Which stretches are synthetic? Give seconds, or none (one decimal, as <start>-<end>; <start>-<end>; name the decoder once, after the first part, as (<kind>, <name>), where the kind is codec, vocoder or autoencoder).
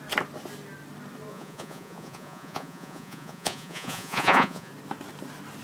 1.3-4.7 (vocoder, Vocos)